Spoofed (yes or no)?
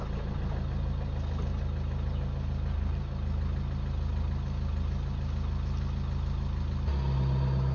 no